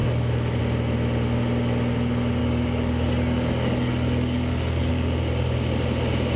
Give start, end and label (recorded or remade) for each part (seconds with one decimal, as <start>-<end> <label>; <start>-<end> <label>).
0.0-0.6 remade; 0.6-2.4 recorded; 2.4-4.9 remade; 4.9-6.4 recorded